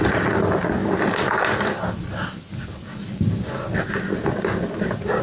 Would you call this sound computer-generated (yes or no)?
no